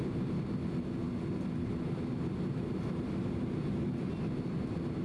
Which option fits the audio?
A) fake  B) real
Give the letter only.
B